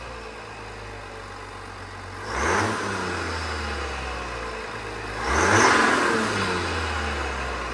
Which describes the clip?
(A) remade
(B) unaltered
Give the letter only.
B